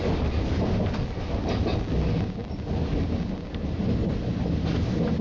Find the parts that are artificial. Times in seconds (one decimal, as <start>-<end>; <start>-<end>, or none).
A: none